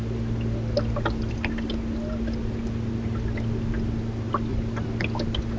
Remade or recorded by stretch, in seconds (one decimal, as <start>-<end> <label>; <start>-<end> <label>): 0.0-4.5 recorded; 4.5-5.0 remade; 5.0-5.6 recorded